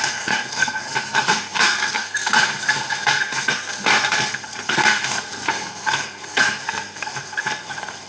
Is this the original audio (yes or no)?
no